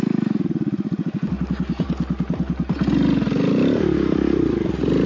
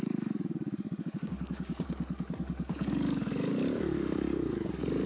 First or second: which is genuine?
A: first